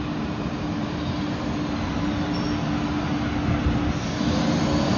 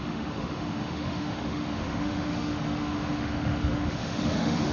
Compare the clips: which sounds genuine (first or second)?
first